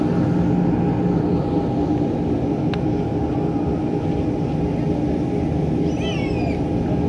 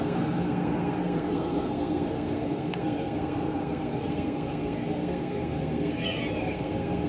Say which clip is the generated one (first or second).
second